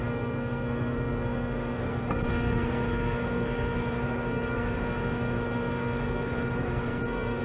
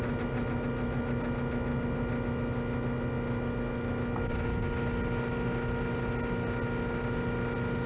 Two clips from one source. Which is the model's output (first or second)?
first